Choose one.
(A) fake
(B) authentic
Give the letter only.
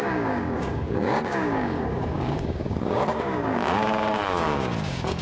A